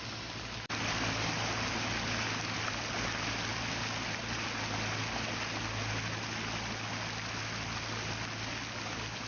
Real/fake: real